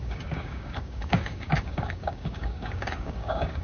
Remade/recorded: remade